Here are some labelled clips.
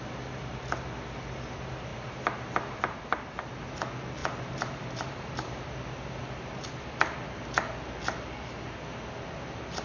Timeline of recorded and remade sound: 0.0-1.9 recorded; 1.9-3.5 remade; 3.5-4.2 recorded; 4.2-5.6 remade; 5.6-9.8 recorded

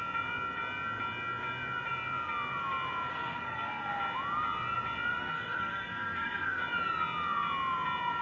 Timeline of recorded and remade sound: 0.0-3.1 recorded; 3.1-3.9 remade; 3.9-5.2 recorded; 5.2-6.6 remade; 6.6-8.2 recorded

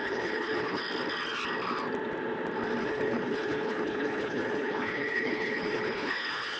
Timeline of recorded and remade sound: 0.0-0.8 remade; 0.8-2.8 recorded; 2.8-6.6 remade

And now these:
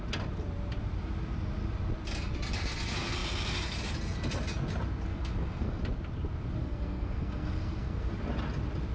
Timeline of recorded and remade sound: 0.0-5.1 recorded; 5.1-5.8 remade; 5.8-6.6 recorded; 6.6-8.1 remade; 8.1-8.9 recorded